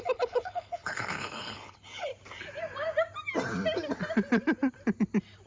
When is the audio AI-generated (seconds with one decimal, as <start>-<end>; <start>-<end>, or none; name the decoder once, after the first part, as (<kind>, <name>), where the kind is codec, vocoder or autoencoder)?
0.0-2.1 (codec, HILCodec)